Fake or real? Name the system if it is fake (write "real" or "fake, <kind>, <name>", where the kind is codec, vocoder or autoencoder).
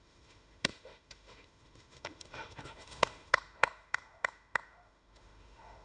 fake, autoencoder, DAC-VAE